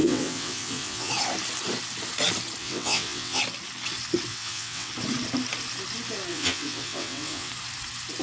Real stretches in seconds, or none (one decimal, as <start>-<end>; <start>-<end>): 1.1-2.6; 3.4-4.3; 4.9-6.3; 7.5-8.2